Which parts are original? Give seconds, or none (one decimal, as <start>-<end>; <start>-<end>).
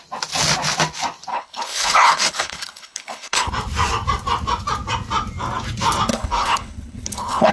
0.0-1.3; 3.5-6.1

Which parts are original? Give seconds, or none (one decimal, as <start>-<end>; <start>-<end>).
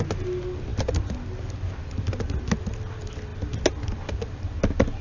0.0-5.0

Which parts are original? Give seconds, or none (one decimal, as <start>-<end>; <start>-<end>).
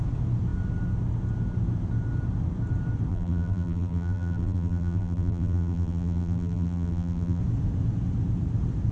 0.0-3.1; 7.4-8.9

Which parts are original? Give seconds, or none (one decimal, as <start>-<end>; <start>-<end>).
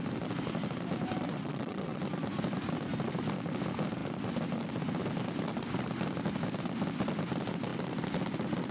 0.0-1.3; 2.0-8.7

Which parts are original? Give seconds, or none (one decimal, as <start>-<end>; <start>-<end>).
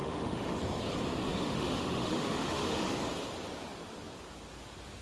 0.6-1.3; 2.9-5.0